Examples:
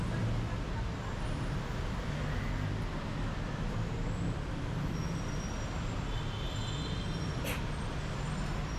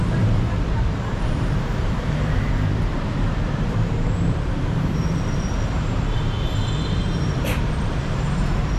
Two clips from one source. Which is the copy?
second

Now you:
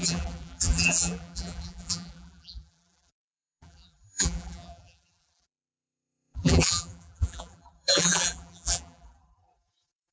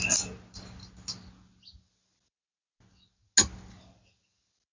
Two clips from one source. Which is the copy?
first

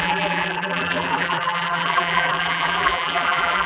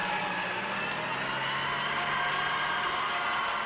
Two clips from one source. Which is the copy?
first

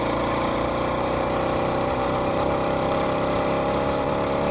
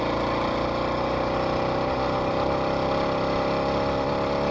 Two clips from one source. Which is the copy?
first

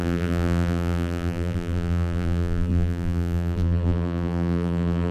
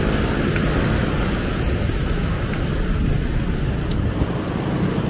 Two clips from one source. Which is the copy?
first